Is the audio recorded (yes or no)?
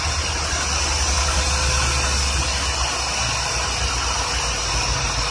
yes